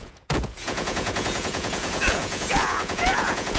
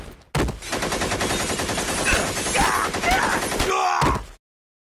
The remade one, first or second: first